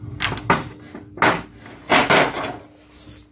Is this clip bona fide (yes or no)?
yes